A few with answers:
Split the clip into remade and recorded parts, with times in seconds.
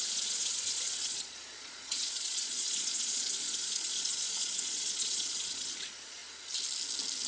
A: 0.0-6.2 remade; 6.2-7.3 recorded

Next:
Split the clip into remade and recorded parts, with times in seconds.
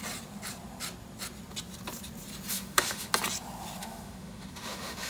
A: 0.0-2.5 recorded; 2.5-3.1 remade; 3.1-3.8 recorded; 3.8-5.1 remade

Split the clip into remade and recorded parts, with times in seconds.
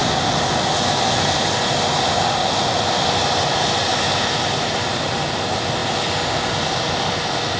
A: 0.0-3.9 recorded; 3.9-4.4 remade; 4.4-7.6 recorded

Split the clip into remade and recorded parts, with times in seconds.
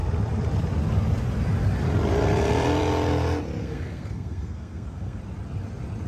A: 0.0-3.6 recorded; 3.6-5.2 remade; 5.2-6.1 recorded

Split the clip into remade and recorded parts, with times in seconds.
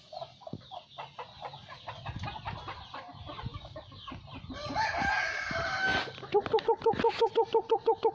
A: 0.0-8.1 recorded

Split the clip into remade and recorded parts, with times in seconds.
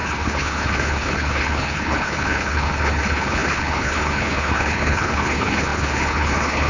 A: 0.0-6.7 remade